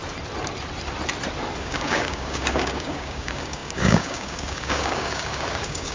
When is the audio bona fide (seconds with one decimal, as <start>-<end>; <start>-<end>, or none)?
0.0-1.6

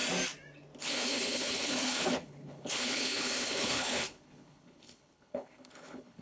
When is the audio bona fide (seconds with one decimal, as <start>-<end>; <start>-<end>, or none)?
0.0-0.8